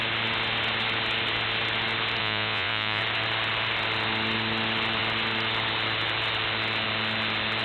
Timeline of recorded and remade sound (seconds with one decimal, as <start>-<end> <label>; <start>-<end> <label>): 0.0-2.2 recorded; 2.2-3.0 remade; 3.0-7.6 recorded